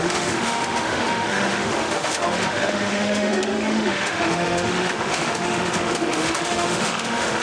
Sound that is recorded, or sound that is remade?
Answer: remade